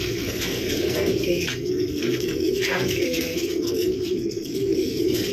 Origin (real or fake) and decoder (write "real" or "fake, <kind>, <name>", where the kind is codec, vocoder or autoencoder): fake, codec, SNAC